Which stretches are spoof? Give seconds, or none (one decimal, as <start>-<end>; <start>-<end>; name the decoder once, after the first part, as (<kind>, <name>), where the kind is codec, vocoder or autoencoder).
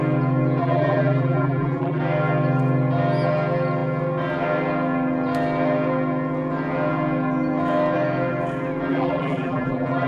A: 0.6-2.0 (vocoder, BigVGAN v2); 8.9-10.1